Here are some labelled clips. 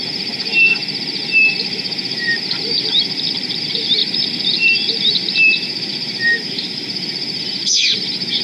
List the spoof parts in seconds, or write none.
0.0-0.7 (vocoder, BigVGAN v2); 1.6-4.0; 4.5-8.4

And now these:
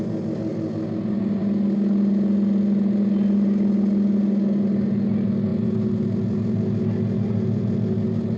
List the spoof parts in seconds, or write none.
none